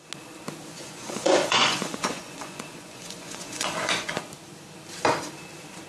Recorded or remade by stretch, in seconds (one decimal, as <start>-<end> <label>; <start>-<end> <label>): 0.0-0.7 recorded; 0.7-4.2 remade; 4.2-5.9 recorded